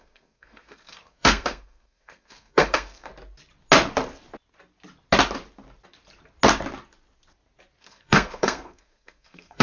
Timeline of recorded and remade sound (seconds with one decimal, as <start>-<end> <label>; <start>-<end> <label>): 0.0-3.1 remade; 3.1-7.8 recorded; 7.8-9.6 remade